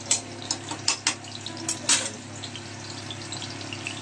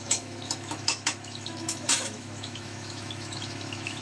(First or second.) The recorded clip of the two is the first